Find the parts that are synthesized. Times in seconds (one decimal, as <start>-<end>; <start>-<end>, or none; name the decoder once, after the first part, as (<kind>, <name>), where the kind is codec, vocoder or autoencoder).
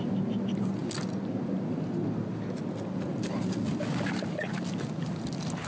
none